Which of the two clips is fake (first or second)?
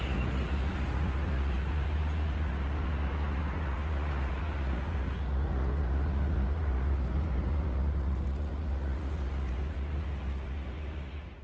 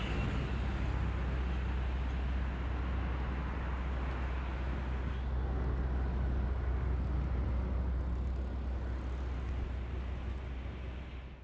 first